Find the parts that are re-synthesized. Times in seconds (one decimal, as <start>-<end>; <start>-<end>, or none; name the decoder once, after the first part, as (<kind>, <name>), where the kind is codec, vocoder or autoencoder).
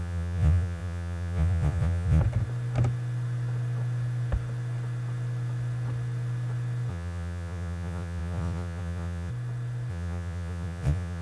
0.0-2.2 (vocoder, Vocos); 6.9-9.3; 9.9-11.2